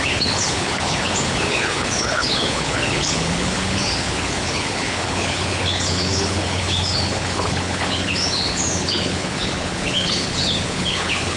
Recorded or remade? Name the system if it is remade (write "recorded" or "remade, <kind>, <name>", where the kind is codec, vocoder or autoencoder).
remade, codec, HILCodec